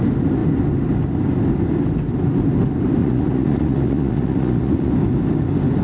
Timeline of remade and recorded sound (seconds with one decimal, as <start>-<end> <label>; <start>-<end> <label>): 0.0-3.0 recorded; 3.0-4.9 remade; 4.9-5.8 recorded